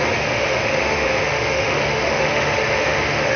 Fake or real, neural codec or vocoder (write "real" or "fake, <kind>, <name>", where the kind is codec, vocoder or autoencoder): fake, autoencoder, DAC-VAE